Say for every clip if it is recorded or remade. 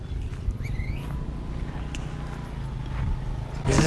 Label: recorded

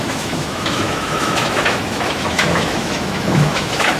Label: remade